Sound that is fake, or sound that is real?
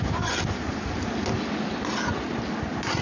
real